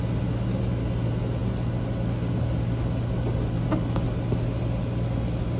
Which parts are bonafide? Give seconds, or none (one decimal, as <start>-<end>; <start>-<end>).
0.0-5.6